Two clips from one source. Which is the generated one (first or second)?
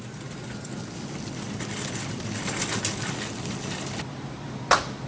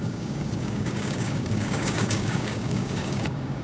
second